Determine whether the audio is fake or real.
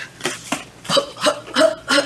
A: fake